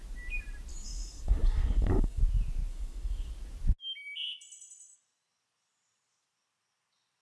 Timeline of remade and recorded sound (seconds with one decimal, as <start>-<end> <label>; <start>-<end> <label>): 0.0-0.7 recorded; 0.7-2.2 remade; 2.2-2.7 recorded; 2.7-3.3 remade; 3.3-7.2 recorded